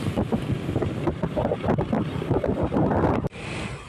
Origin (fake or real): fake